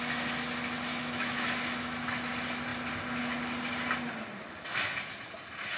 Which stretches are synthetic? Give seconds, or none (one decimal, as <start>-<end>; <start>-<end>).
0.9-2.3